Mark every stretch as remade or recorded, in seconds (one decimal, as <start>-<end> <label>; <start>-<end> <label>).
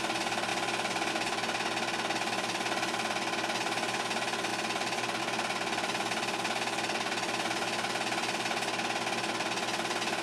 0.0-10.2 recorded